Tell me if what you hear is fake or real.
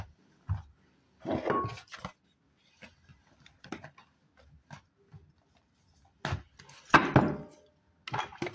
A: real